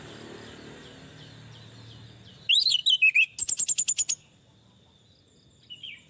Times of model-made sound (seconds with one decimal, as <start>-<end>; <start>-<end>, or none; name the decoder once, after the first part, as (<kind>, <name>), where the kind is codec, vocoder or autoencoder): none